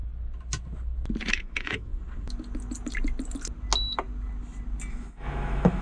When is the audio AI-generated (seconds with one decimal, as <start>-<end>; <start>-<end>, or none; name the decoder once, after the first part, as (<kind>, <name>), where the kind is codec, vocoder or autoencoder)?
1.3-1.9 (autoencoder, DAC-VAE); 4.9-5.8

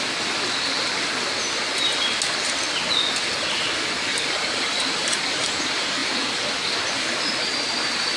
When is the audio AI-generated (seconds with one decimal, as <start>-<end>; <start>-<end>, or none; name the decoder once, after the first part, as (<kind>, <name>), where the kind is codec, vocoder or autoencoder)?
4.1-5.6 (vocoder, BigVGAN v2)

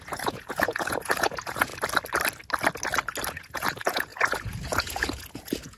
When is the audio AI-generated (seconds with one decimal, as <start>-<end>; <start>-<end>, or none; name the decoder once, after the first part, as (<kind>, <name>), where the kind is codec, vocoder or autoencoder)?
0.0-1.7 (vocoder, Vocos); 3.3-5.8